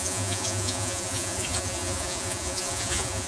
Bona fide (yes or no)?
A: no